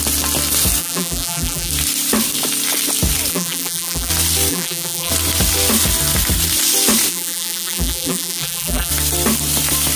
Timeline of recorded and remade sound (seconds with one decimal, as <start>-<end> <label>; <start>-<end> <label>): 0.0-0.8 recorded; 0.8-1.7 remade; 1.7-3.3 recorded; 3.3-4.1 remade; 4.1-4.5 recorded; 4.5-5.1 remade; 5.1-7.1 recorded; 7.1-8.9 remade; 8.9-10.0 recorded